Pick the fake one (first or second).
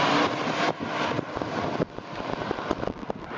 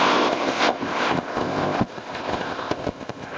second